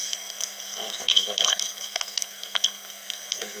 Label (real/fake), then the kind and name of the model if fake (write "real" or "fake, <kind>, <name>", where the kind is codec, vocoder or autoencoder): fake, codec, SNAC